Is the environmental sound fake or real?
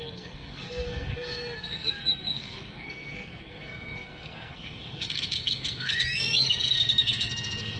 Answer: fake